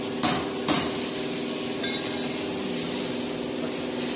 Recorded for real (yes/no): yes